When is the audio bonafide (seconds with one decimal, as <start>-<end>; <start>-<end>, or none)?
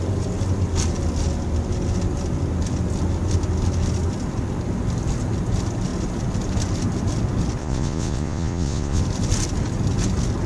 0.0-7.6; 9.0-10.5